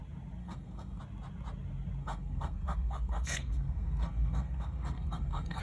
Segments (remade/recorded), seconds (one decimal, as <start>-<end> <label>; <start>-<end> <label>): 0.0-0.4 recorded; 0.4-1.0 remade; 1.0-2.0 recorded; 2.0-5.6 remade